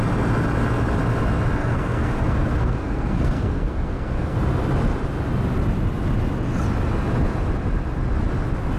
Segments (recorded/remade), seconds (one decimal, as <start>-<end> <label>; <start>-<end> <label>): 0.0-1.6 recorded; 1.6-4.4 remade; 4.4-8.8 recorded